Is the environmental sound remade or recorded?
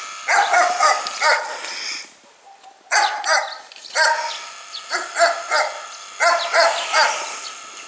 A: recorded